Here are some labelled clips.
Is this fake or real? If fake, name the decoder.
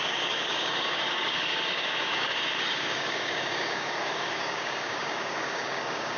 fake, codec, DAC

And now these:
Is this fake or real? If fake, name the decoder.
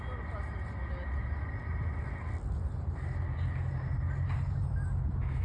real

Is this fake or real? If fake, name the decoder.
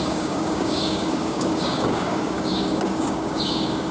fake, codec, DAC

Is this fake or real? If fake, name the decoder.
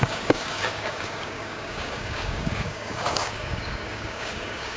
fake, codec, DAC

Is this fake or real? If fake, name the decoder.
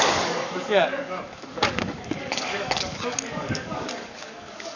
fake, codec, DAC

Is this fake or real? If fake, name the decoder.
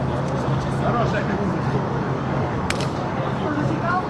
fake, codec, DAC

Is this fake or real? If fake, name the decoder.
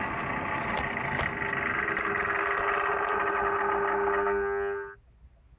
real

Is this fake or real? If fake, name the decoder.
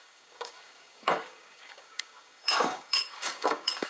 fake, codec, DAC